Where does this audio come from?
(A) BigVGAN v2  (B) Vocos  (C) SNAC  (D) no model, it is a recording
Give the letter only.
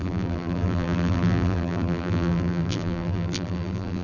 A